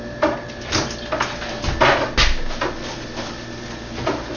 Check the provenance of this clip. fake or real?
real